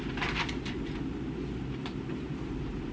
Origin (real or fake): real